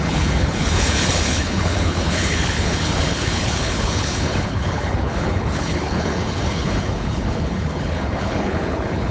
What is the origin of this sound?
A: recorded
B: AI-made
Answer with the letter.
B